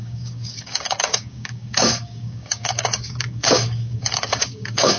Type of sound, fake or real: fake